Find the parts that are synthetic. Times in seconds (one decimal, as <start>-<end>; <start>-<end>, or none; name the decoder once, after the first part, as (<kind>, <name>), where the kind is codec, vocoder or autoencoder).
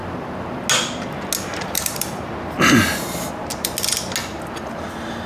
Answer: 1.5-2.3 (vocoder, BigVGAN v2); 4.2-5.3